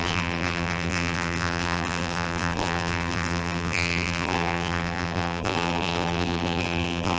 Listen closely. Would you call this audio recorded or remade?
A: remade